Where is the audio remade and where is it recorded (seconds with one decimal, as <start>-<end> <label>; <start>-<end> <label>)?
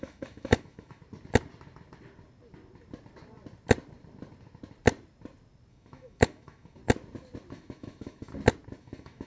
0.0-1.0 remade; 1.0-5.7 recorded; 5.7-6.8 remade; 6.8-7.5 recorded; 7.5-8.3 remade; 8.3-8.8 recorded; 8.8-9.3 remade